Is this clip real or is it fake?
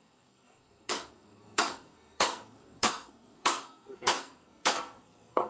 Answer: fake